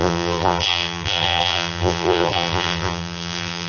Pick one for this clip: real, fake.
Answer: fake